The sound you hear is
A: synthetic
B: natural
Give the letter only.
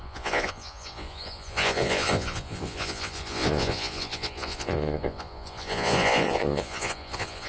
A